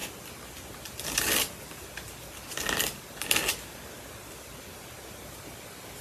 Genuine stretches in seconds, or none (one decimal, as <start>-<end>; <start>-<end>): 0.0-6.0